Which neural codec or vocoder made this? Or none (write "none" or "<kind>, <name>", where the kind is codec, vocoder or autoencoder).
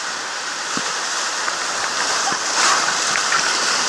none